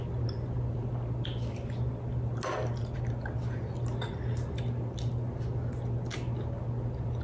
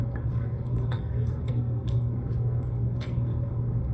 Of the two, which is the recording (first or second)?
first